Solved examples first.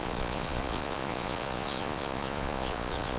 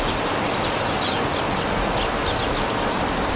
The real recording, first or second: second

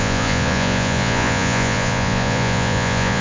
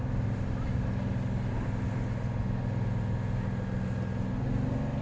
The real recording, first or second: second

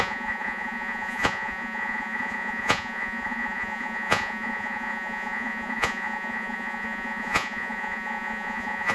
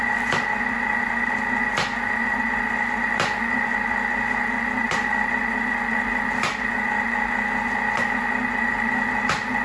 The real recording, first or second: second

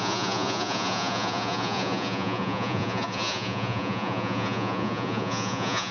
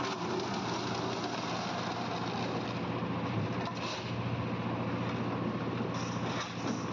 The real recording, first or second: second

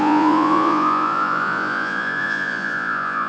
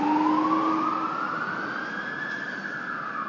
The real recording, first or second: second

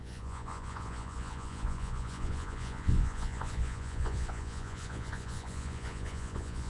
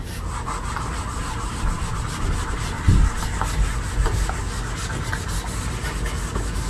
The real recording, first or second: second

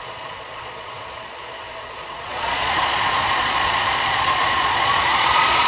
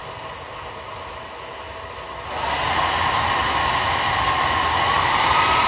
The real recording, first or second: second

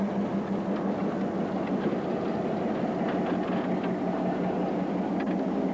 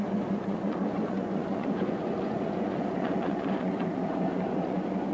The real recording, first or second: first